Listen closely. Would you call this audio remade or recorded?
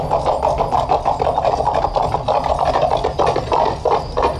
recorded